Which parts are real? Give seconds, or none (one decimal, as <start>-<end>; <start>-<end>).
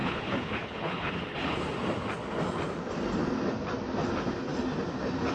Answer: 1.6-5.3